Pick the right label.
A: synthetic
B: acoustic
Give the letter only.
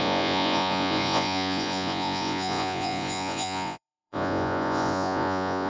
A